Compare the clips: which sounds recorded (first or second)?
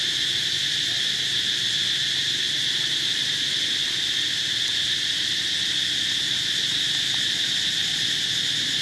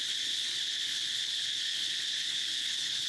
first